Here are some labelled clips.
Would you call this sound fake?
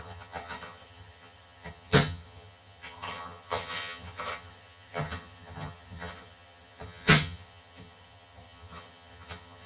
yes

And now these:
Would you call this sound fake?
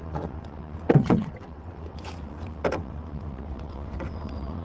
yes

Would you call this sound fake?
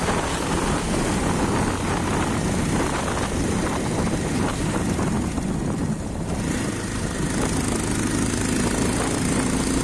no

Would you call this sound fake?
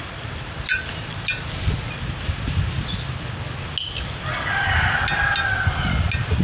no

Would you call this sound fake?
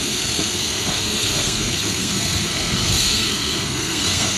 yes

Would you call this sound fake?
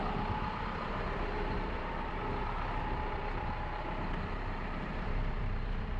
yes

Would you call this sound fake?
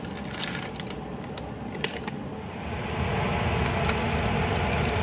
no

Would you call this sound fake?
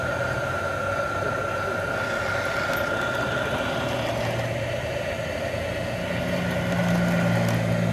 no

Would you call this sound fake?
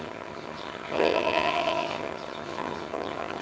yes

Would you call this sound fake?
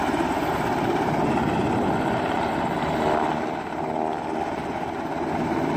no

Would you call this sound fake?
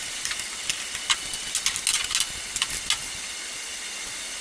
no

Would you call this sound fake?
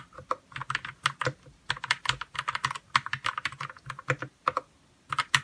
no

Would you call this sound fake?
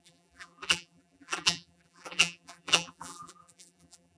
yes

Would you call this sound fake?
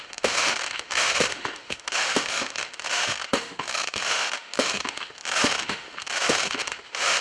yes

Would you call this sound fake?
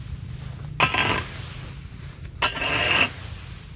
no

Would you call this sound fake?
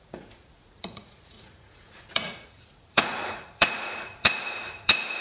yes